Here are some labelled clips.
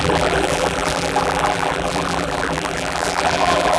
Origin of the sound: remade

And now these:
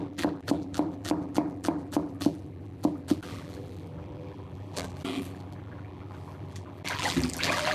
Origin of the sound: remade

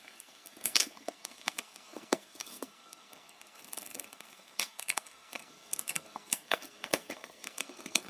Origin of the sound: remade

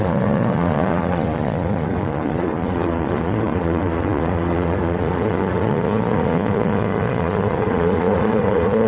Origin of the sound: remade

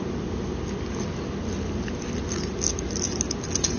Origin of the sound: recorded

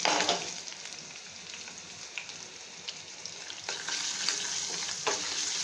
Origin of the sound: recorded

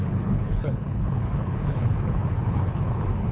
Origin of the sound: remade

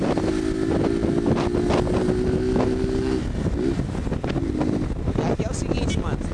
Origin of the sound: recorded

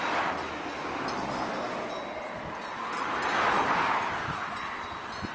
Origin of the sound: recorded